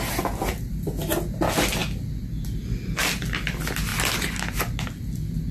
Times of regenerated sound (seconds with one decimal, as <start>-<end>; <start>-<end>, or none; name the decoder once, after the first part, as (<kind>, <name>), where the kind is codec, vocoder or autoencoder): none